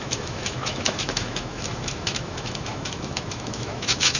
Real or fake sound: fake